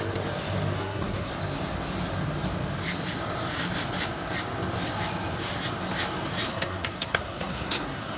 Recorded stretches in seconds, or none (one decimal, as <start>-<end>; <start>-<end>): 0.0-0.8; 1.3-6.5